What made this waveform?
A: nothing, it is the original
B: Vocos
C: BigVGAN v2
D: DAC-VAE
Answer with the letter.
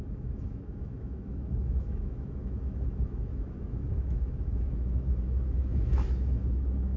D